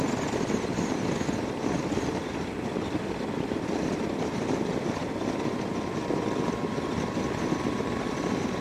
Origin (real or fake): real